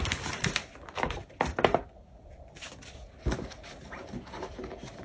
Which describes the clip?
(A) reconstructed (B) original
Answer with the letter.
B